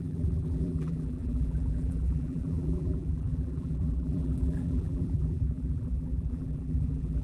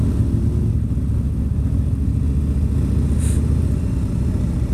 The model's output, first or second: first